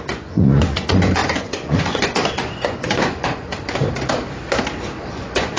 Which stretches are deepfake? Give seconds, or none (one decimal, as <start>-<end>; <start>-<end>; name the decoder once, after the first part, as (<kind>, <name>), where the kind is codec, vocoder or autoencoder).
0.0-3.5 (vocoder, Vocos); 5.1-5.6